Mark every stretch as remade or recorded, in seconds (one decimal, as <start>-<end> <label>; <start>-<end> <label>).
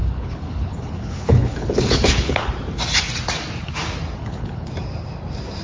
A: 0.0-2.5 remade; 2.5-4.2 recorded; 4.2-4.7 remade; 4.7-5.6 recorded